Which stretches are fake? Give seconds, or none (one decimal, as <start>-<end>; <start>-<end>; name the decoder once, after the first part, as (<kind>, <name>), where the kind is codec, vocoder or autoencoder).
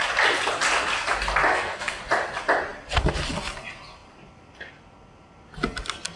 1.5-2.0 (codec, SNAC)